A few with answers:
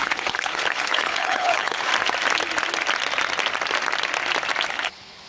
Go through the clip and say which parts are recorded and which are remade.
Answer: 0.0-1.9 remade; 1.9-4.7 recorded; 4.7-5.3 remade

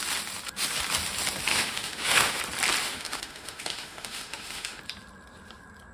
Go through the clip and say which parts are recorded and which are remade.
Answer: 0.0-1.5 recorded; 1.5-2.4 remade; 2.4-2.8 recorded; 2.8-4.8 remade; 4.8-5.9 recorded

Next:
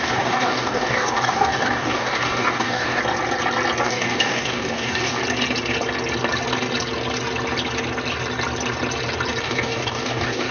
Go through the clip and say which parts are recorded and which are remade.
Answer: 0.0-3.0 remade; 3.0-3.8 recorded; 3.8-5.2 remade; 5.2-9.4 recorded; 9.4-10.5 remade